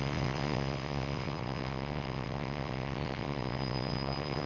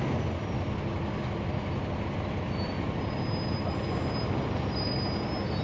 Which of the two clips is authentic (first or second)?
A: second